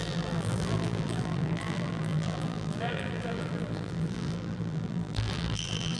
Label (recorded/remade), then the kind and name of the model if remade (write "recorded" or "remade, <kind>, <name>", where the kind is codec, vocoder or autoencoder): remade, vocoder, BigVGAN v2